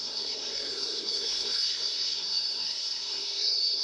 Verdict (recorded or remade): remade